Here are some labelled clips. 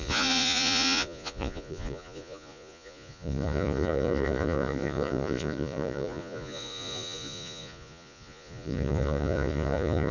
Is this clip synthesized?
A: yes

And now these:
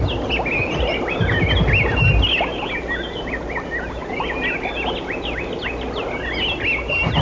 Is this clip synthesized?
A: no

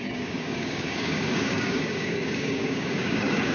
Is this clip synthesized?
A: yes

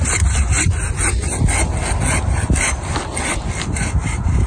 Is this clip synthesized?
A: no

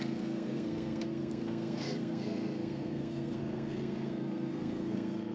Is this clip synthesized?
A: yes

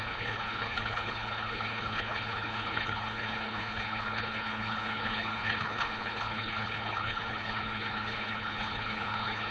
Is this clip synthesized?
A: yes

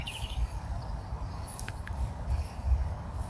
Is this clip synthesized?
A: yes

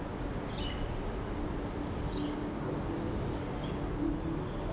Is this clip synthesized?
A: no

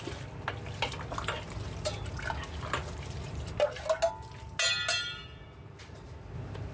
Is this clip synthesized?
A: no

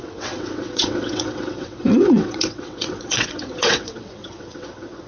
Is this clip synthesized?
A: yes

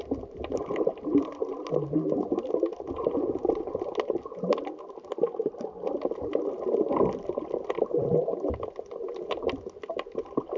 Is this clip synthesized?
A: no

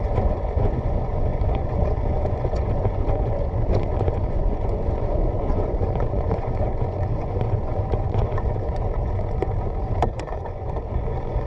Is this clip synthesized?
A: yes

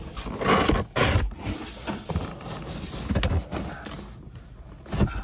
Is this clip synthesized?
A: no